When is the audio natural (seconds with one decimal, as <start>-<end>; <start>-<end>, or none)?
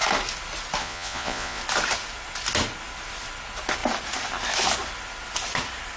0.0-0.8; 1.6-6.0